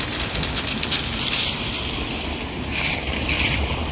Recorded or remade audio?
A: recorded